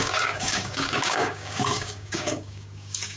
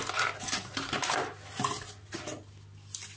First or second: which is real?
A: second